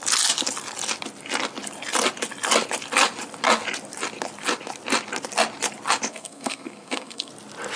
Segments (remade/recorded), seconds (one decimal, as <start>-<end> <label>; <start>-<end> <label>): 0.0-6.1 recorded; 6.1-7.3 remade; 7.3-7.8 recorded